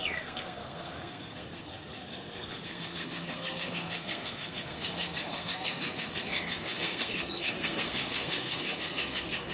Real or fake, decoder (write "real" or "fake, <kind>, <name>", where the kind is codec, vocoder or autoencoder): fake, codec, SNAC